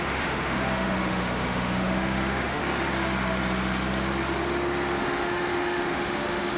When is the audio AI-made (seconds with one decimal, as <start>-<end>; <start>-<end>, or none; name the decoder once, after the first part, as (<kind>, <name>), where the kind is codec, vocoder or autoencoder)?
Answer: 0.0-2.6 (autoencoder, DAC-VAE); 5.0-6.6